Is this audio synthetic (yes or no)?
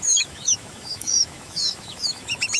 yes